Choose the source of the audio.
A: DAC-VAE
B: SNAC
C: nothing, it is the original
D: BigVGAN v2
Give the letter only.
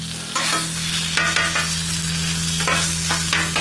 C